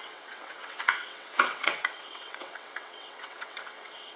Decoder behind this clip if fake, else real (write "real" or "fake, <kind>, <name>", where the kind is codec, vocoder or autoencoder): fake, vocoder, WaveNeXt